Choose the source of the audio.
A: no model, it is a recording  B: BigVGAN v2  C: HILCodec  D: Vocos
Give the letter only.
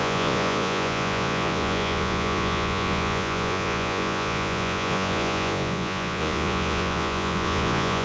D